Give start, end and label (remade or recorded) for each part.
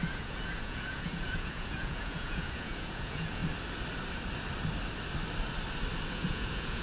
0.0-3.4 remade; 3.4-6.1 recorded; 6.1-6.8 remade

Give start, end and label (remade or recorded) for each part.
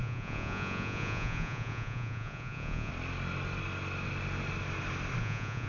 0.0-2.9 remade; 2.9-5.2 recorded; 5.2-5.7 remade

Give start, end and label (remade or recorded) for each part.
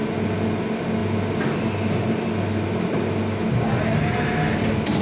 0.0-5.0 recorded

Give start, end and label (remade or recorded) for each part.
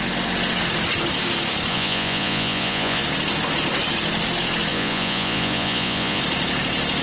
0.0-1.7 recorded; 1.7-3.0 remade; 3.0-4.7 recorded; 4.7-6.2 remade; 6.2-7.0 recorded